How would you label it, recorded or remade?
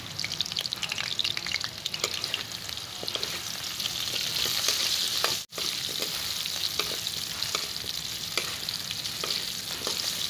recorded